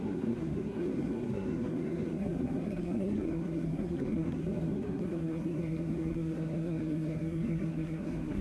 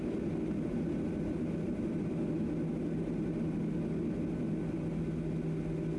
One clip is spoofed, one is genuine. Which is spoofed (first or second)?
first